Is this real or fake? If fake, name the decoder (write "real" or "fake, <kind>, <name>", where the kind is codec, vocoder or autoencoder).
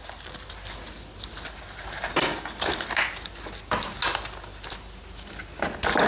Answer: real